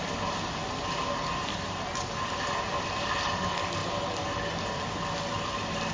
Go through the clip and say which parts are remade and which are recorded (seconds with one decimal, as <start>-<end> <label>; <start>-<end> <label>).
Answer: 0.0-5.9 recorded